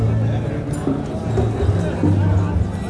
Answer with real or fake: real